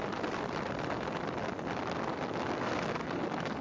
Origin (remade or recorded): recorded